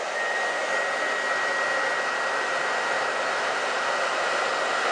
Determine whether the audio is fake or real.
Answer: real